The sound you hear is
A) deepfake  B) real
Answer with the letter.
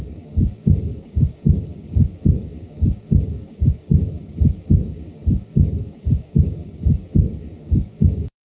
A